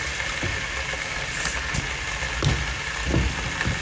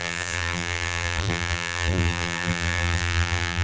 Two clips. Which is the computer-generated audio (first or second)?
second